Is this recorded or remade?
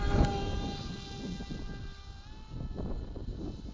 recorded